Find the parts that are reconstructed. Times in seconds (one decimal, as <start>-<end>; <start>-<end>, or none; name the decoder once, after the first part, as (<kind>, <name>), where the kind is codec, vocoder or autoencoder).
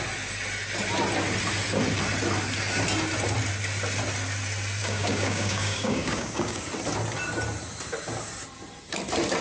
4.8-6.6 (codec, DAC)